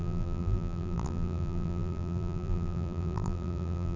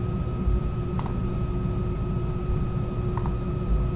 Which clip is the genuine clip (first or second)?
second